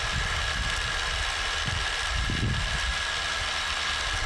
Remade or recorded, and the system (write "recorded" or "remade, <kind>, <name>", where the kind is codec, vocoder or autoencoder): recorded